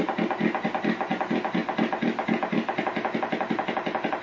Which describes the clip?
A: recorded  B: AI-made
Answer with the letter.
A